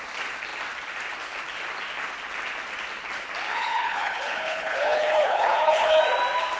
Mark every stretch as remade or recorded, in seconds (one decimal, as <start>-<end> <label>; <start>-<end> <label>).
0.0-3.5 recorded; 3.5-6.0 remade; 6.0-6.6 recorded

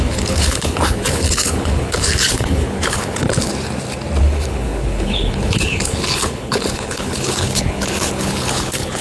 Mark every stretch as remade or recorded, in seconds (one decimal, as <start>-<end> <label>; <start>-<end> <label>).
0.0-3.5 remade; 3.5-4.2 recorded; 4.2-9.0 remade

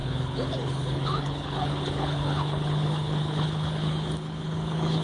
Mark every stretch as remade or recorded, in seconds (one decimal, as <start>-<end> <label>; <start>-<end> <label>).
0.0-5.0 remade

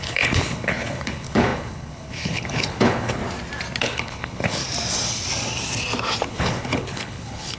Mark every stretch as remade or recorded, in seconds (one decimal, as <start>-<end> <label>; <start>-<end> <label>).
0.0-3.2 remade; 3.2-3.8 recorded; 3.8-4.6 remade; 4.6-6.3 recorded; 6.3-7.6 remade

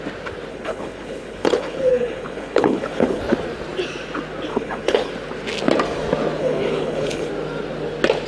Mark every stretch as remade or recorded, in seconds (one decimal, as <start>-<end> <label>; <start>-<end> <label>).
0.0-0.5 recorded; 0.5-3.2 remade; 3.2-4.5 recorded; 4.5-5.1 remade; 5.1-6.4 recorded; 6.4-7.3 remade; 7.3-8.3 recorded

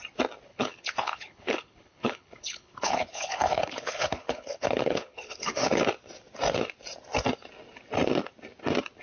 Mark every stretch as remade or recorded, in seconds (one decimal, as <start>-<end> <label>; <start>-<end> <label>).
0.0-0.5 recorded; 0.5-5.8 remade; 5.8-9.0 recorded

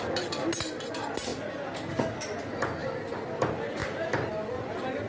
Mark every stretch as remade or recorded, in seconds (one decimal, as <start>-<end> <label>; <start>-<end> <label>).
0.0-5.1 recorded

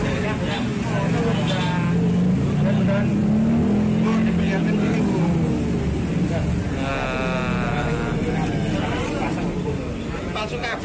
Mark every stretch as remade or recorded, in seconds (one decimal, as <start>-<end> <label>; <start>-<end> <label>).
0.0-10.8 recorded